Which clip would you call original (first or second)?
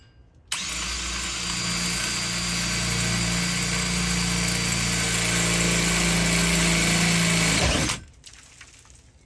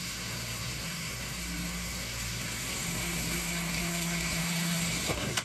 first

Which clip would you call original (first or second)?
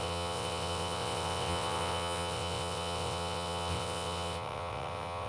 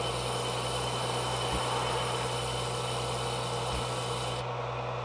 second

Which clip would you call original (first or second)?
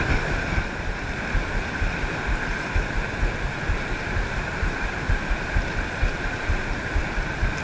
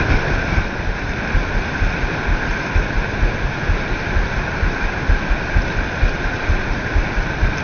second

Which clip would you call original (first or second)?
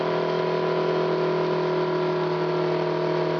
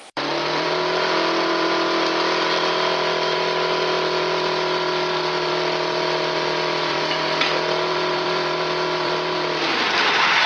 first